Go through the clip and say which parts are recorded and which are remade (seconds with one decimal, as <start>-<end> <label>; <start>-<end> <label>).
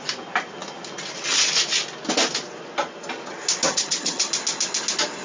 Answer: 0.0-3.7 recorded; 3.7-4.3 remade; 4.3-5.2 recorded